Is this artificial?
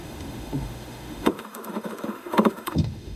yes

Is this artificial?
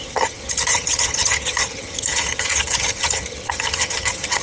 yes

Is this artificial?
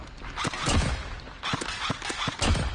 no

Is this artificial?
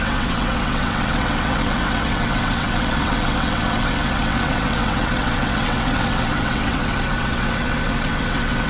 yes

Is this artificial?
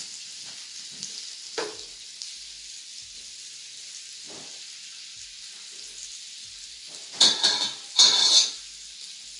no